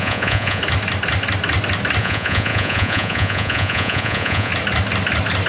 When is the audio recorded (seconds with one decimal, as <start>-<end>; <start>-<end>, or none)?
0.6-2.0; 4.5-5.5